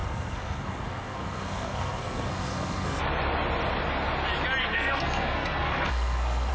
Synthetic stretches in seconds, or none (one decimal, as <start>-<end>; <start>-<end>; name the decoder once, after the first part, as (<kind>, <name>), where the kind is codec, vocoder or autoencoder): 0.0-3.0 (codec, SNAC); 4.6-6.5